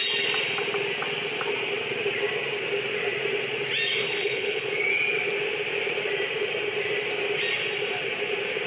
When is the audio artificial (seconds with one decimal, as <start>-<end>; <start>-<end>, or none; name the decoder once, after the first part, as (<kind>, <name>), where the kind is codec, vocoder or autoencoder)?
4.0-4.7 (codec, HILCodec)